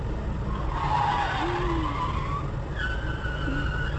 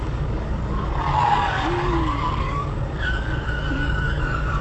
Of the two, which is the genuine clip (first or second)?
first